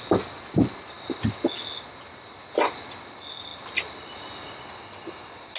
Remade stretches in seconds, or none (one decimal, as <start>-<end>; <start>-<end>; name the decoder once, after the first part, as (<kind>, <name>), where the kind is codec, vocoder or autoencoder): none